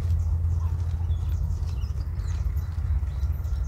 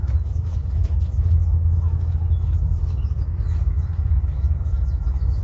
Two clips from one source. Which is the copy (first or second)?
second